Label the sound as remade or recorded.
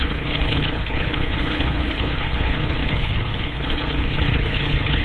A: remade